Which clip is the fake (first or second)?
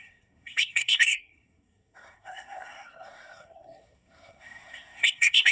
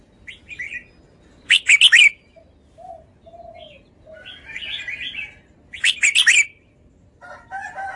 first